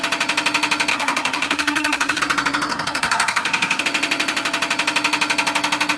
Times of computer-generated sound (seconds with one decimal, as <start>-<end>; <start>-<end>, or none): 0.9-2.2; 2.7-3.8